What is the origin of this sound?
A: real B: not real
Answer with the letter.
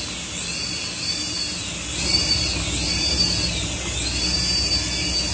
A